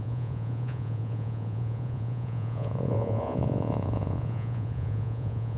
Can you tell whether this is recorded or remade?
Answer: remade